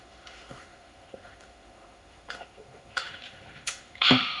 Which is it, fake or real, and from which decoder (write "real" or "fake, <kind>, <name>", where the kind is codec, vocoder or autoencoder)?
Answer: fake, autoencoder, DAC-VAE